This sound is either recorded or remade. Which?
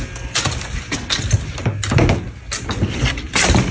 recorded